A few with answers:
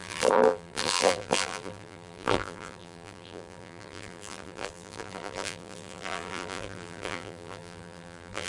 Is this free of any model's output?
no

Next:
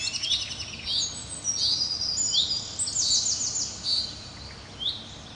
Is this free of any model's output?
yes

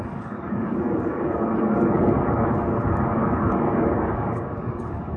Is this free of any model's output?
no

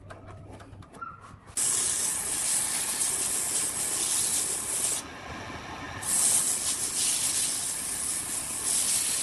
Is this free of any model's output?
yes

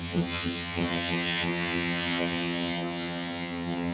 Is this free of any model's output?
no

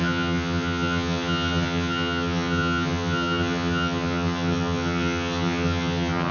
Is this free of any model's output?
no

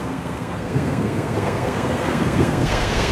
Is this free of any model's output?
no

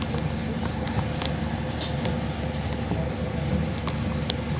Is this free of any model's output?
yes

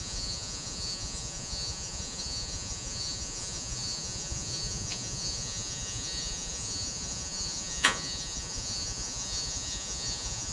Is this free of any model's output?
no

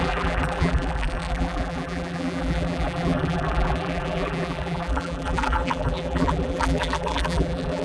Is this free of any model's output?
no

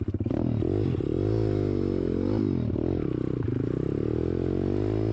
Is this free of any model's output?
yes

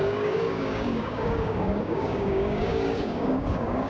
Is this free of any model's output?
no